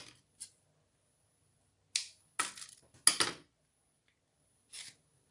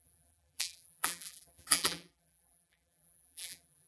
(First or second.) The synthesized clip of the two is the second